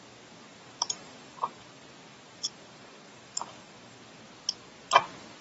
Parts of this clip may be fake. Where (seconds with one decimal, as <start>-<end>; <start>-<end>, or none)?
0.5-1.5; 2.1-4.0